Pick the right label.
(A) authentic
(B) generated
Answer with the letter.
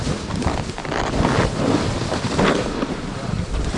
A